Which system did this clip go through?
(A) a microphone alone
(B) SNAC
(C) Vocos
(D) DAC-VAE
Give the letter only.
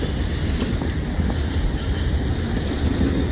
A